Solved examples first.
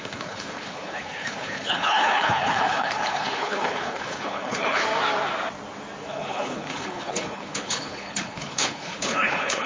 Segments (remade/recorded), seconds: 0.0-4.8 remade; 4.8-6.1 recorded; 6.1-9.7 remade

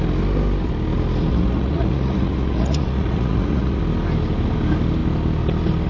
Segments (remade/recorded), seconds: 0.0-1.3 recorded; 1.3-3.8 remade; 3.8-5.9 recorded

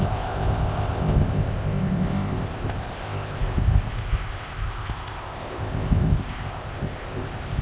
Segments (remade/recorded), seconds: 0.0-7.6 remade